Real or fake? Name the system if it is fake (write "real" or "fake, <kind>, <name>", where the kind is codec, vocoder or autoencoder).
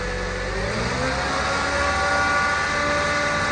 real